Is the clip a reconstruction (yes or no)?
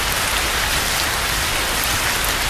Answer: no